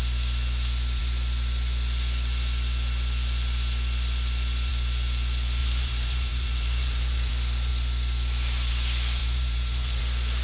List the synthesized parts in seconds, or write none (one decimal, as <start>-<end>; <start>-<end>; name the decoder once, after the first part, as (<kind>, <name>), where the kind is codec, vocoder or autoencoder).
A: 5.6-7.3 (vocoder, BigVGAN v2); 9.2-10.0